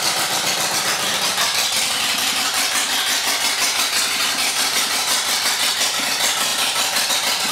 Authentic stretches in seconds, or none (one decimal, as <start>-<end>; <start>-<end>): 0.0-4.2; 5.3-7.5